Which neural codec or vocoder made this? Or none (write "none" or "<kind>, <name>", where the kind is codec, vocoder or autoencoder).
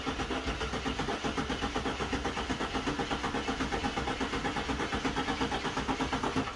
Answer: none